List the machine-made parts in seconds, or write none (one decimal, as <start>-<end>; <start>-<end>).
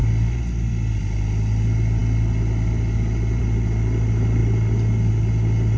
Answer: none